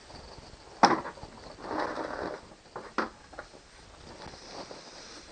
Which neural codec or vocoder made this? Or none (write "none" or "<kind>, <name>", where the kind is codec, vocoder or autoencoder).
none